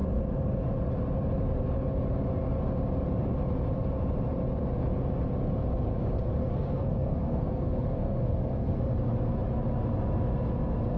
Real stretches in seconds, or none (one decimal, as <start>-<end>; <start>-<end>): 0.0-6.4; 8.8-11.0